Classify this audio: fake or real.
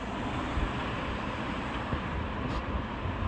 real